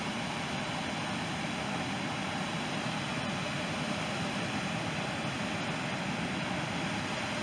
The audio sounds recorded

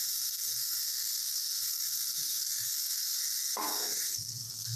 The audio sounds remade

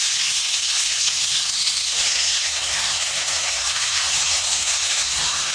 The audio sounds remade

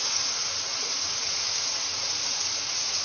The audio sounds remade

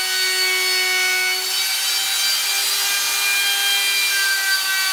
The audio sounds recorded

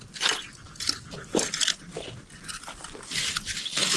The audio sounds recorded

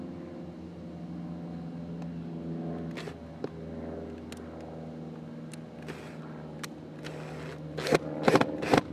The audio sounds recorded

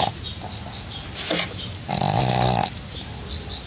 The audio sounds recorded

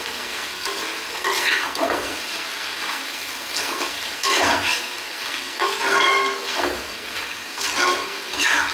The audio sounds remade